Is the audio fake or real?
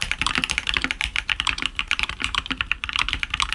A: fake